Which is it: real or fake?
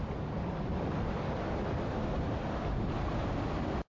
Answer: real